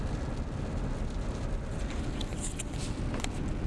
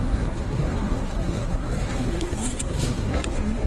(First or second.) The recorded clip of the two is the first